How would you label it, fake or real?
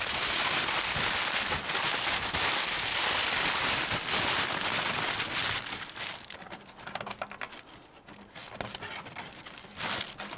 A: real